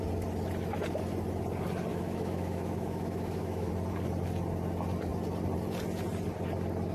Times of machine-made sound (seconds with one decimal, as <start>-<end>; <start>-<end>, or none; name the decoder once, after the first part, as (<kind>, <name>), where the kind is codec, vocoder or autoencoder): 1.9-3.7 (autoencoder, DAC-VAE)